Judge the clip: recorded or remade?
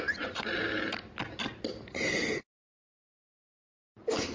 recorded